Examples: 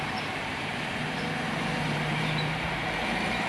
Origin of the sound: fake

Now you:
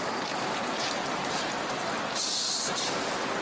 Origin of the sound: fake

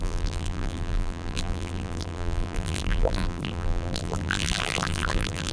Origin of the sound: fake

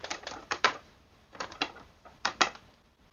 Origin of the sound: fake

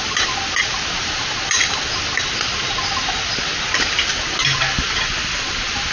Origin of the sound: real